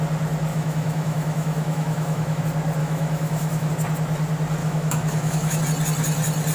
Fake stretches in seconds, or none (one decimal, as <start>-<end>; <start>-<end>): 0.5-2.4; 2.8-3.7; 4.6-5.6